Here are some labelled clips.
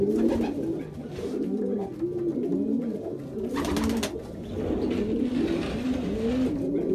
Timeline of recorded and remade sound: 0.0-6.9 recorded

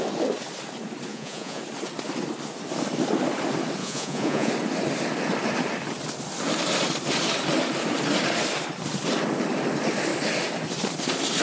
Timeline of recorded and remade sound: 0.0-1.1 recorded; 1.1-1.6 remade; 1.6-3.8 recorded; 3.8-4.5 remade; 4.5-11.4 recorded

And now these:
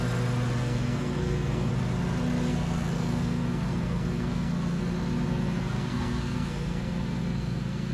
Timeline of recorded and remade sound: 0.0-0.6 recorded; 0.6-1.7 remade; 1.7-2.5 recorded; 2.5-4.8 remade; 4.8-5.3 recorded; 5.3-7.9 remade